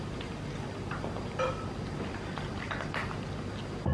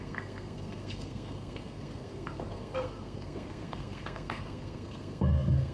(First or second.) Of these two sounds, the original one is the first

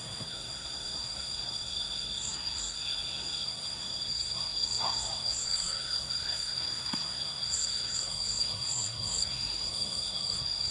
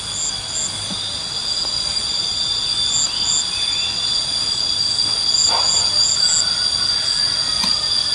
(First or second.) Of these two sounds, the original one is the second